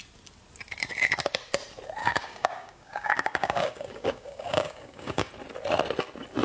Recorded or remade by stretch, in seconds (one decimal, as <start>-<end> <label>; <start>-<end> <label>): 0.0-2.0 recorded; 2.0-5.3 remade; 5.3-6.4 recorded